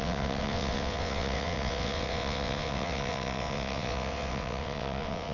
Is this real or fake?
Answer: fake